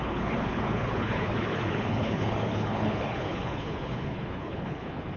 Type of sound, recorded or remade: remade